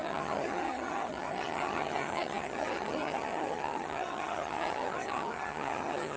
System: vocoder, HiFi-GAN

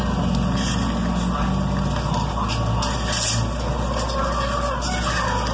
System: none